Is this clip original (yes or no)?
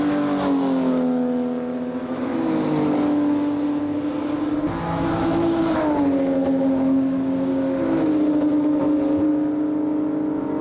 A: yes